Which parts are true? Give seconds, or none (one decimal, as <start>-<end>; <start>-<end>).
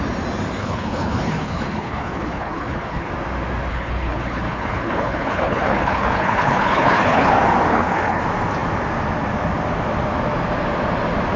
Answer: 0.0-0.6; 3.1-3.7; 7.3-7.7; 8.2-11.4